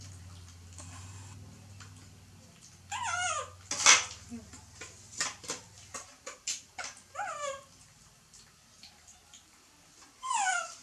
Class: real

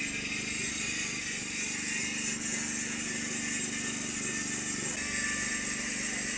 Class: real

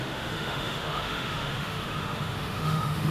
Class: fake